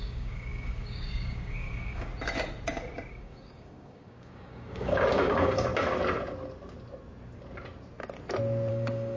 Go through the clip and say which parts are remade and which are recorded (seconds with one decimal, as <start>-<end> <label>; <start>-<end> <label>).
0.0-2.1 remade; 2.1-3.1 recorded; 3.1-5.7 remade; 5.7-8.7 recorded; 8.7-9.2 remade